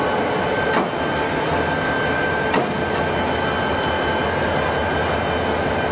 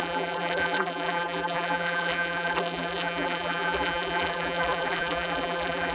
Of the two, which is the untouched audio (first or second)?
first